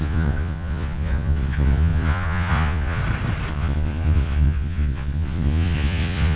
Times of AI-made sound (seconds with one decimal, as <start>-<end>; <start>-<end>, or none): 0.0-3.0; 3.5-6.4

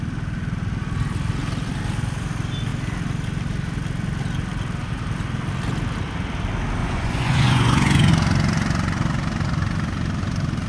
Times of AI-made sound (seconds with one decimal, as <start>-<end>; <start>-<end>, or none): 6.8-8.1

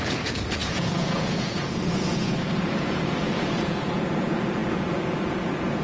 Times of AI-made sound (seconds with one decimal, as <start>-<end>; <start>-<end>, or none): 0.0-5.8

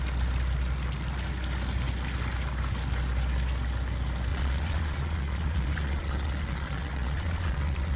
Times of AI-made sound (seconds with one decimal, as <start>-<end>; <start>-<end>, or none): 4.3-8.0